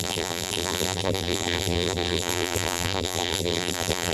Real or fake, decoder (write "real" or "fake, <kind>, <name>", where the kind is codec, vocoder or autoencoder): fake, vocoder, BigVGAN v2